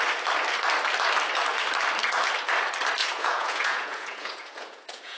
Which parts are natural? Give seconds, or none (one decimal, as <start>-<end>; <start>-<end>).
0.0-3.0